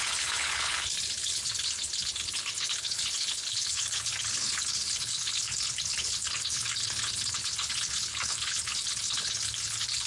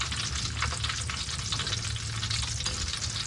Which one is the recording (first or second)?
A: second